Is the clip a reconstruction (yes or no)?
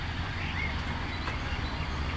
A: yes